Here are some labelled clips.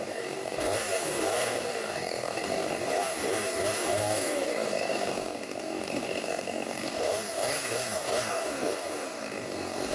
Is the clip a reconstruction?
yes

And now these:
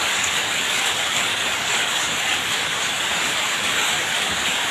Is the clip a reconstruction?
yes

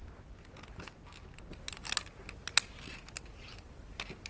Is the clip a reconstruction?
no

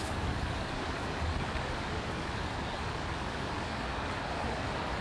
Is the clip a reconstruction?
yes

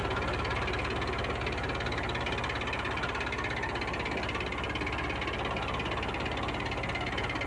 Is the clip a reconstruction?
no